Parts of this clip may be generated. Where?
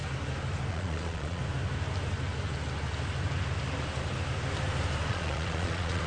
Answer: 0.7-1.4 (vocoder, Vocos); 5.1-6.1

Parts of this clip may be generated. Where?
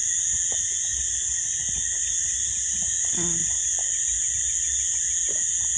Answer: none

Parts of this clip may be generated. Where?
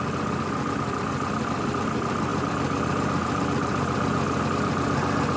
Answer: none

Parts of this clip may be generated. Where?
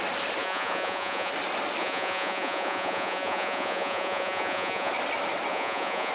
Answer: 0.4-1.3 (vocoder, Vocos); 1.8-4.9; 5.5-6.1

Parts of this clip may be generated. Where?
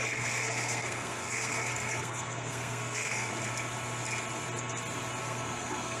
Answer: 0.0-3.3 (codec, SNAC); 5.2-6.0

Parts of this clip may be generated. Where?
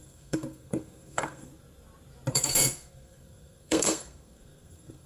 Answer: 0.0-1.5 (codec, SNAC); 2.3-5.1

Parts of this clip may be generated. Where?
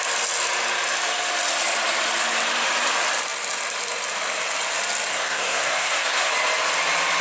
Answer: 5.1-6.3 (codec, SNAC)